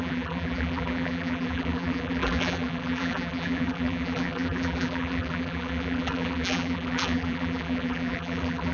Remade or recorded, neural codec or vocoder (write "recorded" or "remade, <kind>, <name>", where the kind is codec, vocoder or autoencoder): remade, vocoder, BigVGAN v2